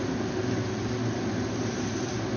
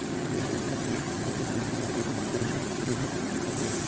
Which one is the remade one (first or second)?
second